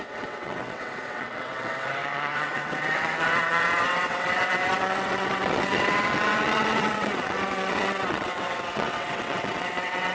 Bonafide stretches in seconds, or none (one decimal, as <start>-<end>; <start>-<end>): none